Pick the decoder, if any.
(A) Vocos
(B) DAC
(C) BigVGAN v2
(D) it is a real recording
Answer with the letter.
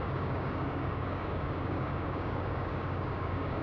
B